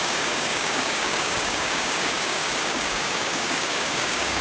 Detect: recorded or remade remade